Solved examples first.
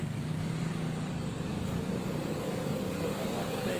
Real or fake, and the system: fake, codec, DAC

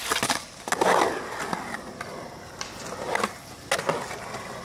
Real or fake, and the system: real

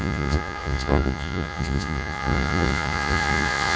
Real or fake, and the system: fake, vocoder, Vocos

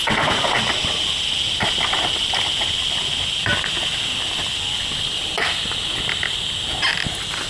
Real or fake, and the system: real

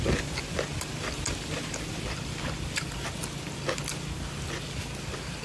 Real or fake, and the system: real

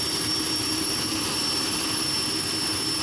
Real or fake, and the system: real